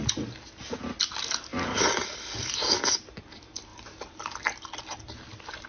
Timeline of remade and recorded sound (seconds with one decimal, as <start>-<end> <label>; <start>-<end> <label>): 0.0-5.7 recorded